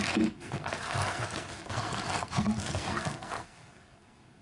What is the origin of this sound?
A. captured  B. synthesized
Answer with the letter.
B